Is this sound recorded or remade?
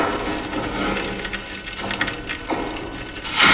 recorded